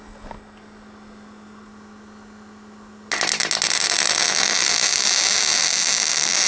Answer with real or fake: real